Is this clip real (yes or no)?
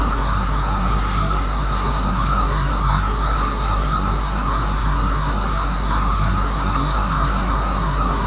no